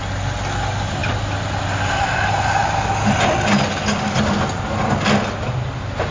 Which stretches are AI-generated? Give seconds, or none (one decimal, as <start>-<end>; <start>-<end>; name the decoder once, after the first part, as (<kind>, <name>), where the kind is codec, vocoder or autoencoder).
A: none